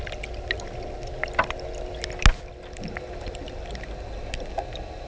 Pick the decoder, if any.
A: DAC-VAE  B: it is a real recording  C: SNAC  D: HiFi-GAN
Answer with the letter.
B